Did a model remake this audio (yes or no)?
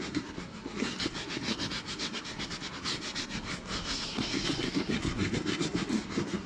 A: yes